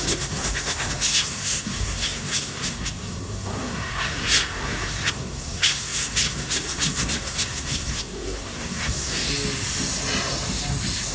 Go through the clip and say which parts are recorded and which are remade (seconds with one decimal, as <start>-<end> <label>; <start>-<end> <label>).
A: 0.0-9.3 remade; 9.3-11.1 recorded